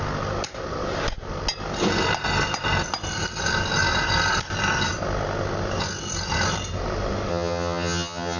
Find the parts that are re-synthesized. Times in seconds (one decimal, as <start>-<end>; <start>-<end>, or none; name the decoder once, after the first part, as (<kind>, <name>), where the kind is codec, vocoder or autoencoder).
7.3-8.4 (vocoder, HiFi-GAN)